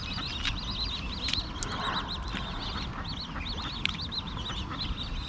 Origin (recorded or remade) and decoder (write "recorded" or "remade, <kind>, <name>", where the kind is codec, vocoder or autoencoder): recorded